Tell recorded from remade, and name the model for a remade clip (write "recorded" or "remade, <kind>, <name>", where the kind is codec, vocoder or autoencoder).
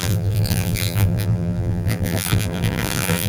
remade, vocoder, BigVGAN v2